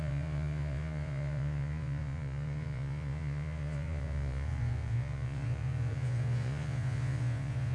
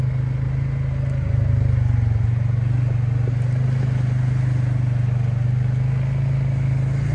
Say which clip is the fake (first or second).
first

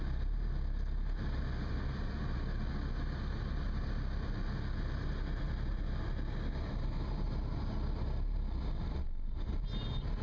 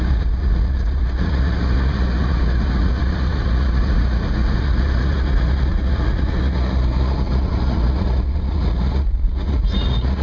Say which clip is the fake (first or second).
second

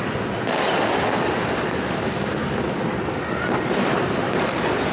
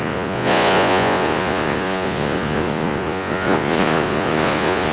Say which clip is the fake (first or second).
second